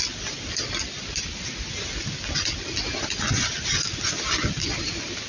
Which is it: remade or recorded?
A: recorded